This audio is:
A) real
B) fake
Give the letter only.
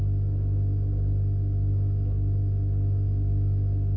A